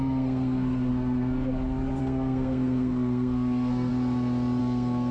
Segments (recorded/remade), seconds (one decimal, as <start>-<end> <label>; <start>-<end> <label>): 0.0-0.9 remade; 0.9-2.0 recorded; 2.0-3.9 remade; 3.9-4.6 recorded; 4.6-5.1 remade